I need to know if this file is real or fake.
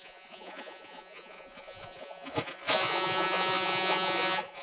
fake